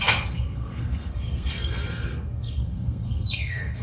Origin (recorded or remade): remade